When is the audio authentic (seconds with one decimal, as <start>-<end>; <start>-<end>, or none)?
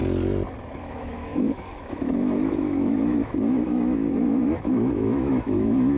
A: 0.0-0.8